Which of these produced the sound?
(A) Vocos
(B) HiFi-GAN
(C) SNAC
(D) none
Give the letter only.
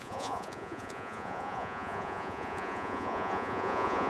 A